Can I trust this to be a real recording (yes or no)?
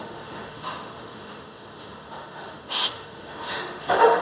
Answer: no